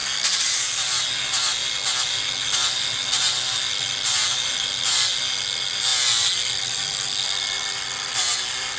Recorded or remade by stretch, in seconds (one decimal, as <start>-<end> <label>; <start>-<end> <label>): 0.0-8.8 recorded